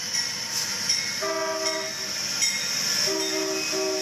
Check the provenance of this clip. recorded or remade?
recorded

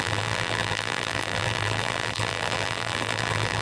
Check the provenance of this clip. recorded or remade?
remade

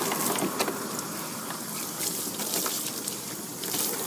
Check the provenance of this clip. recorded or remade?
recorded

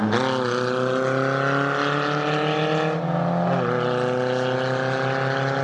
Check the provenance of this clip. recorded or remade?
recorded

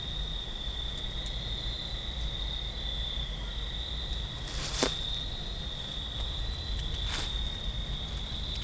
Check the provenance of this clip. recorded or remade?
recorded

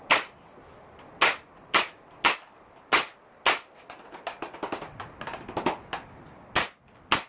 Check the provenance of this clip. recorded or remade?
recorded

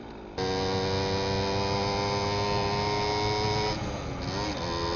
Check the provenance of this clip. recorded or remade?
recorded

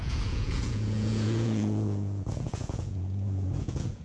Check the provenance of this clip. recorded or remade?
remade